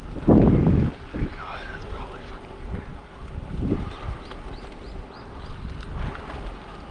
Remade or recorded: recorded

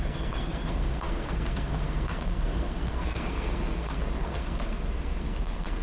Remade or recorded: remade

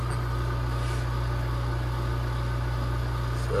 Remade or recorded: recorded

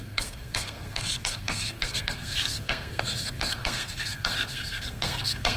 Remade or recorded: remade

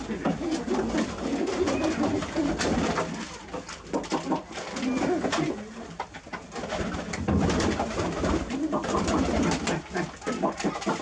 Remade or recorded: recorded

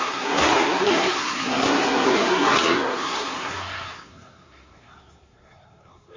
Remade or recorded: remade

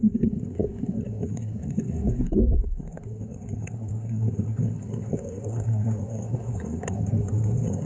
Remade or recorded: remade